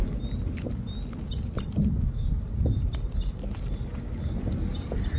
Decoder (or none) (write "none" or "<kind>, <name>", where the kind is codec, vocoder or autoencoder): none